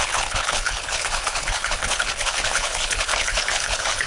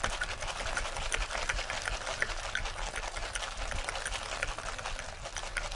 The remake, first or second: first